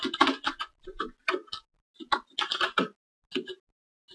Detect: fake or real real